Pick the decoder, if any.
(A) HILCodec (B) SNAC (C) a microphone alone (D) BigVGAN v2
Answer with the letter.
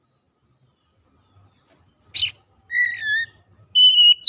C